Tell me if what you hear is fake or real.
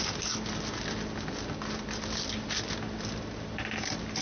real